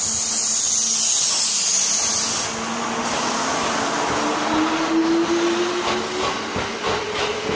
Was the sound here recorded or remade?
recorded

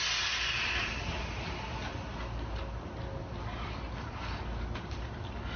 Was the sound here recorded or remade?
recorded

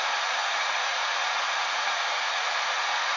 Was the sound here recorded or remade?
remade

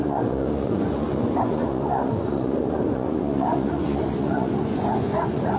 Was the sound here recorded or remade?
remade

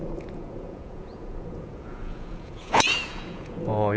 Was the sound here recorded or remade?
remade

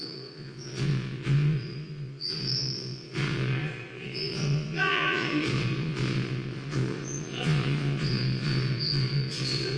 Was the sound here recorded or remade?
remade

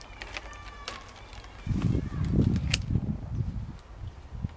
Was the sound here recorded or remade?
recorded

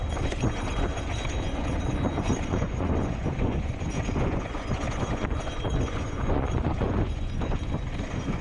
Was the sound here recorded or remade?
remade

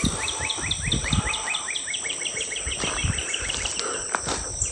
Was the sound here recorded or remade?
recorded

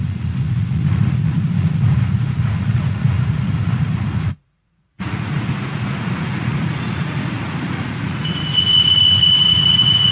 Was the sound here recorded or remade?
remade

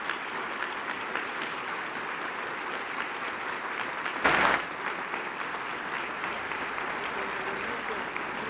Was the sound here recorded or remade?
recorded